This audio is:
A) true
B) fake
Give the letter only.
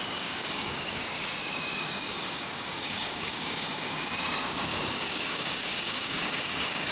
B